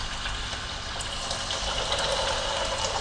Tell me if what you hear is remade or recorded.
recorded